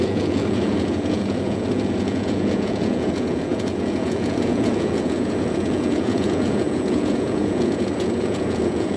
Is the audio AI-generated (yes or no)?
yes